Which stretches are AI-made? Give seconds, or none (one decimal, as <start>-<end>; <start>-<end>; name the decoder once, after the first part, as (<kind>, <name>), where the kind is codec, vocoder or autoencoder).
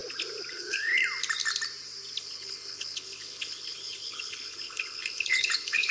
0.5-1.0 (codec, HILCodec); 2.2-5.9